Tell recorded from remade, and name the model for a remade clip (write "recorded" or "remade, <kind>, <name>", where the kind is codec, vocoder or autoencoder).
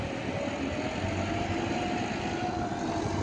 recorded